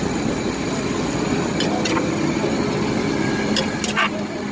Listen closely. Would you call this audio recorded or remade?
recorded